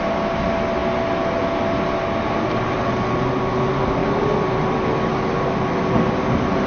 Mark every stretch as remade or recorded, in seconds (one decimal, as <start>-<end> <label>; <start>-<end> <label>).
0.0-6.7 recorded